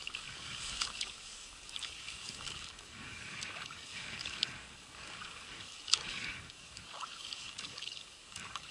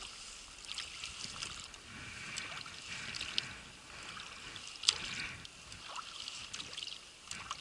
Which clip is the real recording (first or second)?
second